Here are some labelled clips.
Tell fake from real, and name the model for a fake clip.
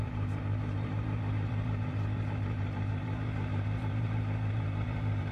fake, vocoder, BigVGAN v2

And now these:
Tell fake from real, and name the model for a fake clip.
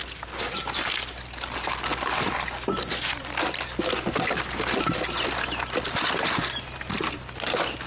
real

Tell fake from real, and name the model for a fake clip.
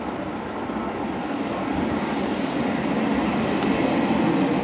real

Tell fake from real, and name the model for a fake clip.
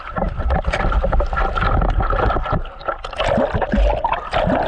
real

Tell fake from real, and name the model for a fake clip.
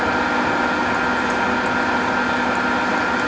real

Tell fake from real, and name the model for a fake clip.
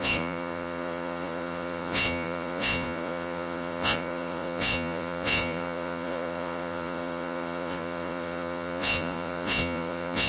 fake, vocoder, Vocos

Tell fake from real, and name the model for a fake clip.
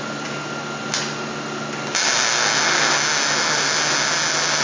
real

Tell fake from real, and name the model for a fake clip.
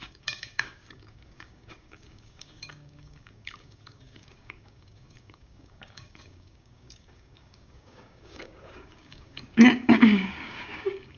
fake, codec, DAC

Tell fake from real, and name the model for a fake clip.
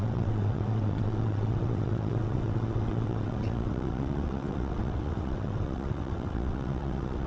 fake, vocoder, WaveNeXt